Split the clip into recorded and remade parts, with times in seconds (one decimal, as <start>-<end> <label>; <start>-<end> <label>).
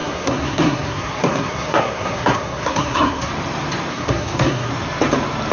0.0-3.3 remade; 3.3-3.9 recorded; 3.9-4.7 remade; 4.7-5.5 recorded